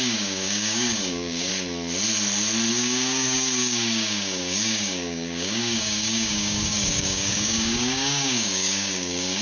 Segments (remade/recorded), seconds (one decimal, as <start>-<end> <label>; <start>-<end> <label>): 0.0-1.5 remade; 1.5-2.7 recorded; 2.7-9.4 remade